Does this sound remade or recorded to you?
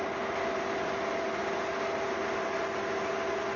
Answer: recorded